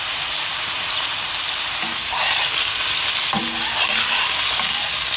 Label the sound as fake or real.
real